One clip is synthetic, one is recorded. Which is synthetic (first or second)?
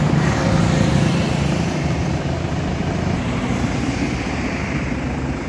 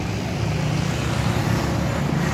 first